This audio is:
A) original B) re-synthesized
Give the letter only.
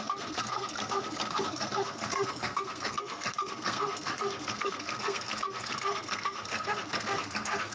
B